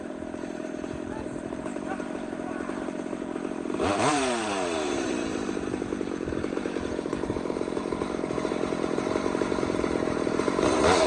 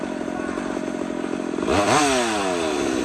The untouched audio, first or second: second